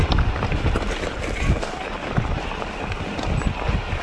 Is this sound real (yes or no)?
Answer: yes